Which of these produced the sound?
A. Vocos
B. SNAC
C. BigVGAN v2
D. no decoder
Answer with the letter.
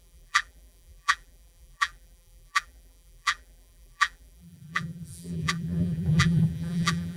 C